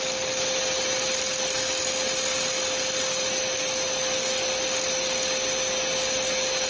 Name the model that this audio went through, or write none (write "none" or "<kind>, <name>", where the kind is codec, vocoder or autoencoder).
none